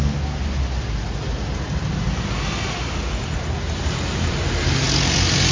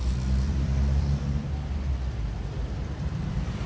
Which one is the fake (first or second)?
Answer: second